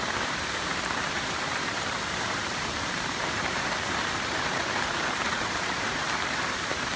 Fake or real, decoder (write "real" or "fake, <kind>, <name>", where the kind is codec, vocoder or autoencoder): fake, vocoder, BigVGAN v2